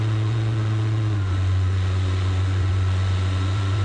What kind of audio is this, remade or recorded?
remade